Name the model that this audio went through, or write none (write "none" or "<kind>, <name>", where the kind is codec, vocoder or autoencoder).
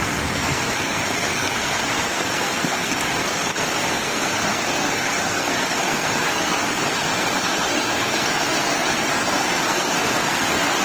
codec, SNAC